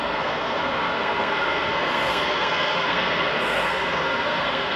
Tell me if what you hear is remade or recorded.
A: remade